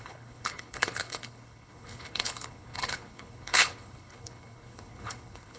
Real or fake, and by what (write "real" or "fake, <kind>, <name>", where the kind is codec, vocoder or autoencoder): fake, codec, HILCodec